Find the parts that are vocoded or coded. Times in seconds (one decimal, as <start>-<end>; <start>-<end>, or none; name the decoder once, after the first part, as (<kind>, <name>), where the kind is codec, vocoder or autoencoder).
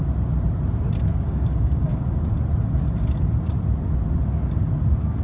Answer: 1.1-2.2 (codec, DAC)